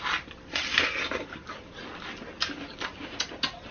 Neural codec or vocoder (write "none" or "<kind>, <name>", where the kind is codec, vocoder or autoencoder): none